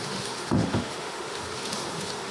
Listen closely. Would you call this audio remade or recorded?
remade